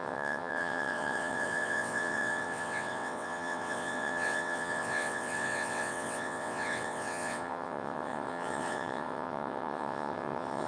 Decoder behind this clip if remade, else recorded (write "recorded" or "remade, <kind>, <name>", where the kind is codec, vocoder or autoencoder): remade, vocoder, WaveNeXt